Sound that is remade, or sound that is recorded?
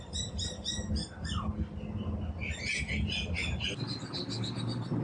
recorded